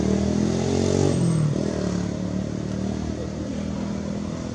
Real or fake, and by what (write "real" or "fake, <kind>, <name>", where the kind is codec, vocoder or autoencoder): real